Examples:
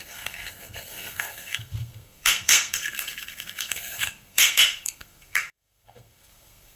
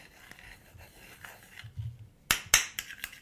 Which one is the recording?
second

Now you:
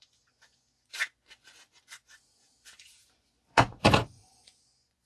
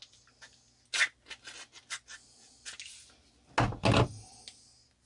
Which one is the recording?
second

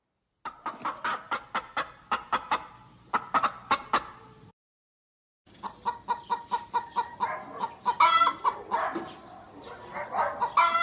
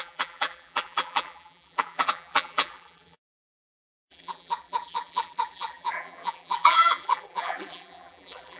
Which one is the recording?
first